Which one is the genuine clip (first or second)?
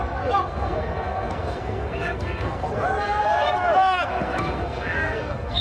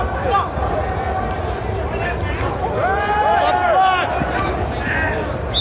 second